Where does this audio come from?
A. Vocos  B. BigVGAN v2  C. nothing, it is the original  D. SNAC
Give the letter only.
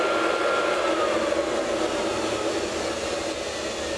C